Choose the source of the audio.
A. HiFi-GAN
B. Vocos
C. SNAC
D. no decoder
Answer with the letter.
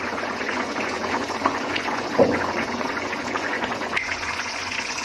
B